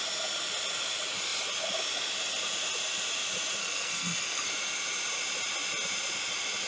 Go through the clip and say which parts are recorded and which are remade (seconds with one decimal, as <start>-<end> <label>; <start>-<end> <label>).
0.0-3.6 recorded; 3.6-4.5 remade; 4.5-6.7 recorded